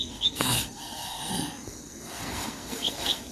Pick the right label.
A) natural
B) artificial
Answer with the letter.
B